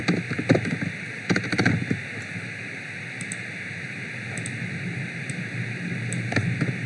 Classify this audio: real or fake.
real